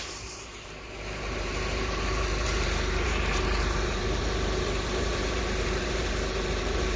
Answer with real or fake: fake